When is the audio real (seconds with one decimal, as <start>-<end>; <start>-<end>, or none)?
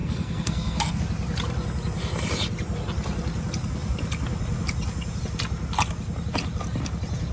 1.0-7.3